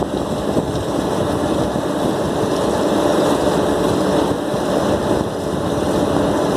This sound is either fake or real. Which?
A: real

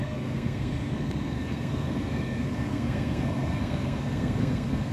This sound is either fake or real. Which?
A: fake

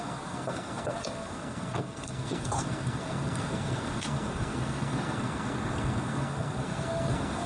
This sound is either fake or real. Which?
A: fake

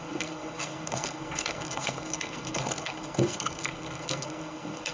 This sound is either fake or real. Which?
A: fake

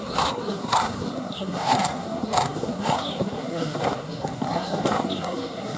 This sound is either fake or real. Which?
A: fake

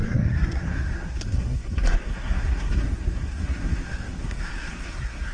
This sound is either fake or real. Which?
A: fake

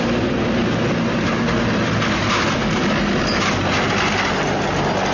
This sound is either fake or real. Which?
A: real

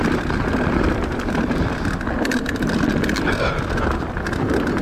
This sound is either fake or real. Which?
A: real